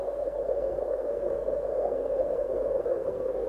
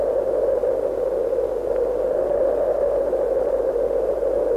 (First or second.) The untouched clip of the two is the second